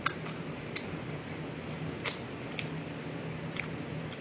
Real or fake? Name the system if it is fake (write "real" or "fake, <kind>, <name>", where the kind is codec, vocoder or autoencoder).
real